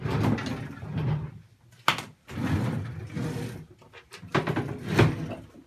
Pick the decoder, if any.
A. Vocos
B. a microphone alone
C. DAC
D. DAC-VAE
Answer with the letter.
B